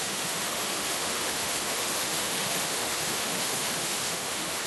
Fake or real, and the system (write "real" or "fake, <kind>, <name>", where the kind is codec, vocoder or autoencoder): fake, autoencoder, DAC-VAE